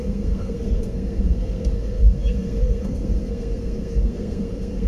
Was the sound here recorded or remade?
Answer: remade